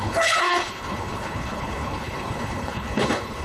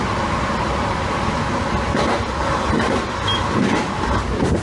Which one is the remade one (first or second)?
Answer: first